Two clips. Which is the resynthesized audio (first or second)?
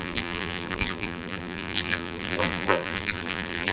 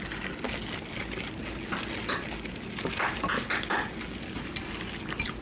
first